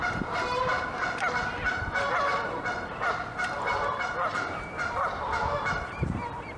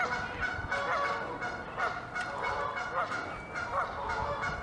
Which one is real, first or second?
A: second